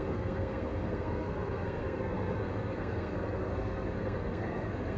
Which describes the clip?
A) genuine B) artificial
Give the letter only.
B